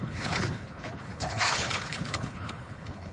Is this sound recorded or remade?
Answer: remade